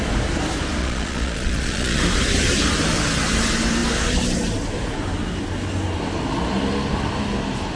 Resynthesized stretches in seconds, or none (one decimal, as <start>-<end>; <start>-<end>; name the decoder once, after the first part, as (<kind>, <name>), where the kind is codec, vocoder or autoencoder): 0.8-2.0 (vocoder, Vocos)